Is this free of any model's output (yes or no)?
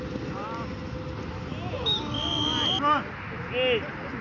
yes